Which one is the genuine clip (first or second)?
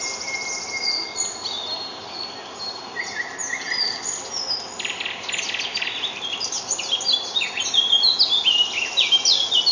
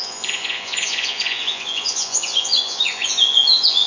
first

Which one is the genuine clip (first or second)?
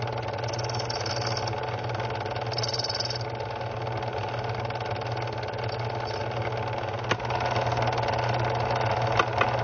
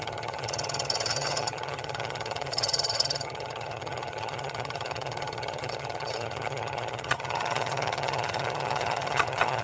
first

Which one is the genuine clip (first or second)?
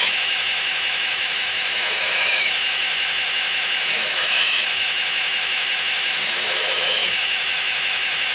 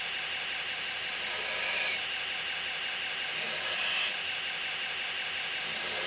second